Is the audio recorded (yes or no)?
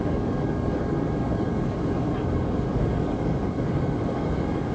no